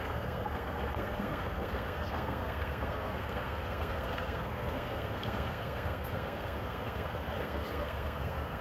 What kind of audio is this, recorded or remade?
remade